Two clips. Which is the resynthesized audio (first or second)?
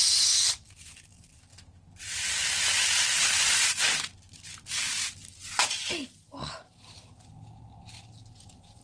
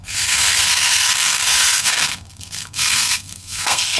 second